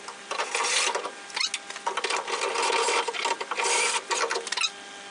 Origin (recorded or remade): recorded